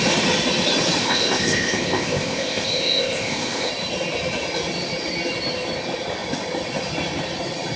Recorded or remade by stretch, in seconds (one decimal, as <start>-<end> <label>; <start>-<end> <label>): 0.0-1.0 recorded; 1.0-3.7 remade; 3.7-7.8 recorded